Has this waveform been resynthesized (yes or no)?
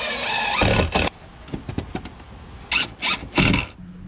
no